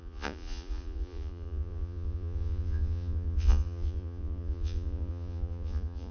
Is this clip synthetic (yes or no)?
yes